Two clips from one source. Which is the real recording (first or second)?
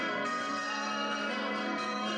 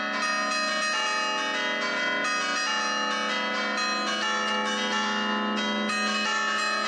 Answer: second